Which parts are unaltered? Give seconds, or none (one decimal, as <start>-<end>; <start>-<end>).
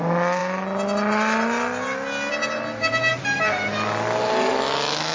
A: 0.0-5.1